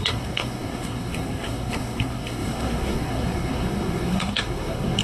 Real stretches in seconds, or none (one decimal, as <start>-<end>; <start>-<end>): none